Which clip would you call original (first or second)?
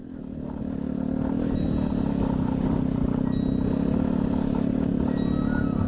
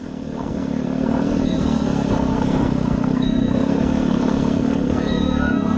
first